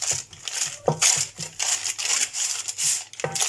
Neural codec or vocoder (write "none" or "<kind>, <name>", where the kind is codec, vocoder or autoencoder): none